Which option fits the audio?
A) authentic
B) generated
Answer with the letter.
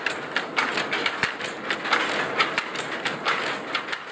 A